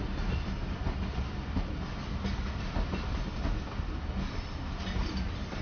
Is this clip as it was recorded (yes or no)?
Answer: yes